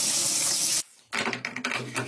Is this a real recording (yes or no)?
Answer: yes